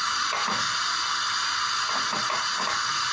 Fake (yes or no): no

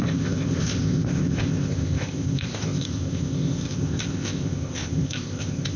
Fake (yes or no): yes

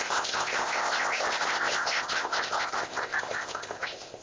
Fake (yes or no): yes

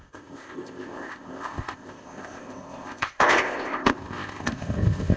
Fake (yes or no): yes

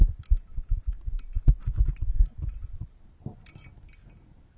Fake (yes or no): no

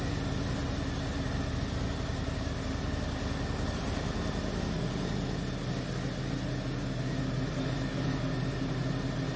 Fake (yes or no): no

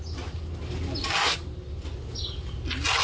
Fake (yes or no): no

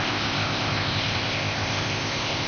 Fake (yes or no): yes